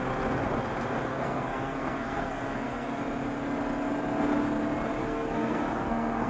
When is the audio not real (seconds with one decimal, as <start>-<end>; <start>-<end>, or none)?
1.1-3.0; 5.0-6.3